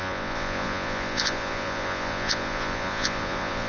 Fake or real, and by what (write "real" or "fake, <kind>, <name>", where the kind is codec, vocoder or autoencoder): fake, vocoder, Vocos